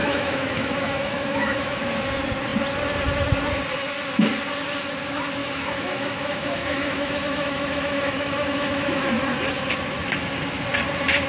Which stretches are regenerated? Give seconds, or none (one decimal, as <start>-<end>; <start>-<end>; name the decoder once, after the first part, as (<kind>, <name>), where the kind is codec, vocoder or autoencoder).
0.0-1.8 (autoencoder, DAC-VAE); 5.4-9.0